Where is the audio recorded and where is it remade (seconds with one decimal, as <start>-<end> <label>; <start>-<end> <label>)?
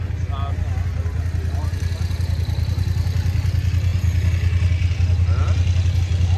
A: 0.0-6.4 recorded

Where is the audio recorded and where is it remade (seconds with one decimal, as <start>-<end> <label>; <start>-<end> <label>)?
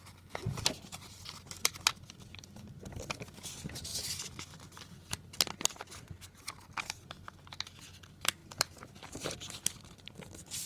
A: 0.0-0.9 recorded; 0.9-1.9 remade; 1.9-8.4 recorded; 8.4-10.0 remade; 10.0-10.7 recorded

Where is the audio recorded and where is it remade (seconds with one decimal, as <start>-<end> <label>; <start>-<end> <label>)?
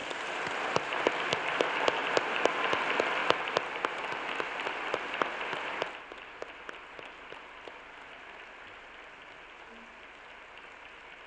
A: 0.0-1.1 remade; 1.1-2.0 recorded; 2.0-2.8 remade; 2.8-11.3 recorded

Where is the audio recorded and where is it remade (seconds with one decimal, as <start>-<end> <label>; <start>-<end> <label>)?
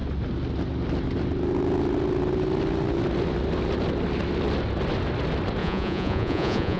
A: 0.0-5.6 recorded; 5.6-6.8 remade